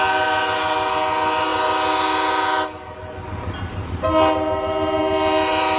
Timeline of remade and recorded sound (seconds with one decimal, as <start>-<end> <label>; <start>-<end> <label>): 0.0-5.8 recorded